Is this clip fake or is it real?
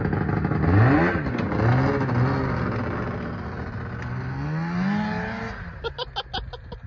real